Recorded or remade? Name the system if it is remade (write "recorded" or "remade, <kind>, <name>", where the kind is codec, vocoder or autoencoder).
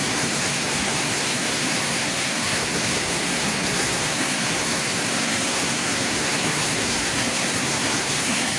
remade, codec, SNAC